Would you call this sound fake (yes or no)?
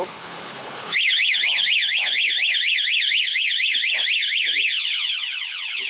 yes